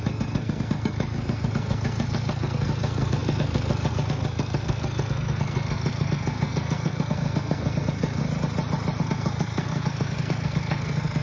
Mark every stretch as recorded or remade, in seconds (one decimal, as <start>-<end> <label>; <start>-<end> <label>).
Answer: 0.0-8.2 remade; 8.2-9.0 recorded; 9.0-11.2 remade